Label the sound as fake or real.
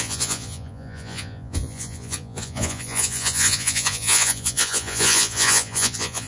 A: fake